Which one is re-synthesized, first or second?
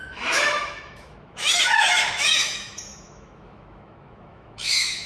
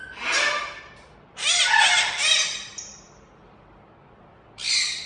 first